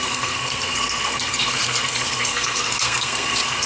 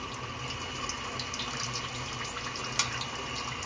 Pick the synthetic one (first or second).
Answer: first